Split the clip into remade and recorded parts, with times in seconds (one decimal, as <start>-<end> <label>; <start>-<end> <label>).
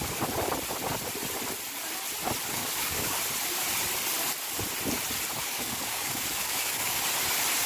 0.0-2.6 recorded; 2.6-3.2 remade; 3.2-5.4 recorded; 5.4-7.0 remade; 7.0-7.7 recorded